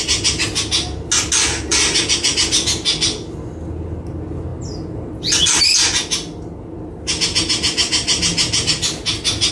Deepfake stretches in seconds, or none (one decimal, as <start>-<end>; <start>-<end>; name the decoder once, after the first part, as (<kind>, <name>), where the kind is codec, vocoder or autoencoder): none